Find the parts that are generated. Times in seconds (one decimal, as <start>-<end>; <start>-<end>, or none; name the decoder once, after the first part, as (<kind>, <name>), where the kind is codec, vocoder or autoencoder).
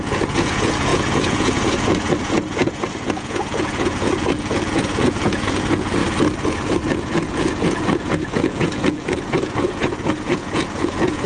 0.0-6.0 (vocoder, Vocos); 6.9-11.3